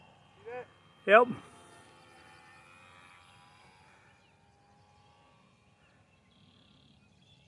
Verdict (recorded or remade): recorded